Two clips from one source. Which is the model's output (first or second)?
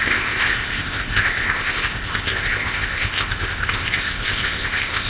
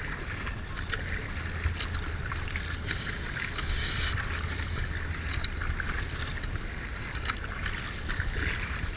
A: first